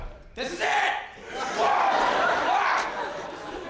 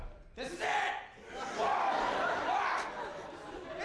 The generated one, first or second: first